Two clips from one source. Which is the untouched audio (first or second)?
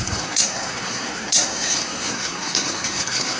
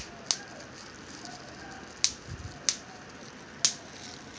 second